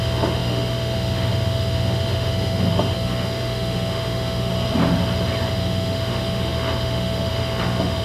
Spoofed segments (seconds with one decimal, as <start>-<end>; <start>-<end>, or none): 0.0-4.5; 5.5-8.0